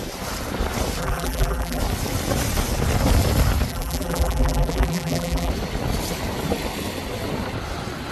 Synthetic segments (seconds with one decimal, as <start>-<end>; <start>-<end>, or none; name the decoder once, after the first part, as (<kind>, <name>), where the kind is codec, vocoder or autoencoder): 1.0-1.8 (vocoder, BigVGAN v2); 3.7-5.5